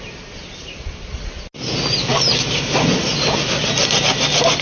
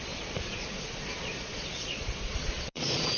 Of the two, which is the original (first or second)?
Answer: first